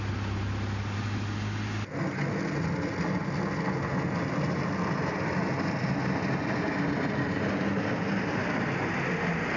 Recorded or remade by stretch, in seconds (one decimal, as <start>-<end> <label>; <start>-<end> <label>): 0.0-9.6 recorded